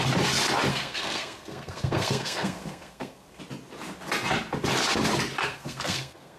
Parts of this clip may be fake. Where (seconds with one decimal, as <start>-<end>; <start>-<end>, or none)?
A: 0.7-3.4; 5.4-6.4